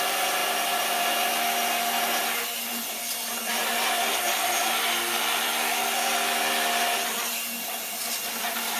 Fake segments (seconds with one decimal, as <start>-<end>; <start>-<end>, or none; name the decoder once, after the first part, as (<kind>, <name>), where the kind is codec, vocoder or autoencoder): none

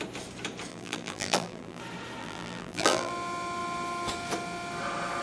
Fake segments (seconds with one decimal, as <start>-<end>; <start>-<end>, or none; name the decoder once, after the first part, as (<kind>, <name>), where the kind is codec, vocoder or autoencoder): 0.7-1.8 (vocoder, BigVGAN v2); 2.2-3.1

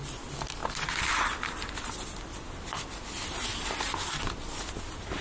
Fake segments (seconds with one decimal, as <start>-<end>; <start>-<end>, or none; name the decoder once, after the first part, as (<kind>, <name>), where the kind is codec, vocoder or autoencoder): none

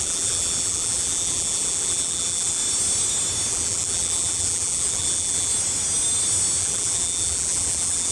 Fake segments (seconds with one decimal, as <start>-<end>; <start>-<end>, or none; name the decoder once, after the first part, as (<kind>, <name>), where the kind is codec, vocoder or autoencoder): 0.0-2.6 (vocoder, BigVGAN v2); 3.5-5.5; 6.6-8.1

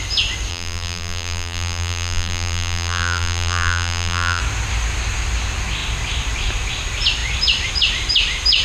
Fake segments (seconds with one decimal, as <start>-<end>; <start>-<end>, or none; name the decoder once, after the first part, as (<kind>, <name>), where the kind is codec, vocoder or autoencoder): 0.5-4.4 (vocoder, BigVGAN v2)

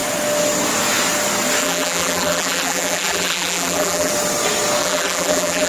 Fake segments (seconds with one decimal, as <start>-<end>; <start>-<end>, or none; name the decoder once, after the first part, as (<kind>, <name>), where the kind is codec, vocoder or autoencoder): 1.6-4.1 (vocoder, BigVGAN v2); 4.8-5.7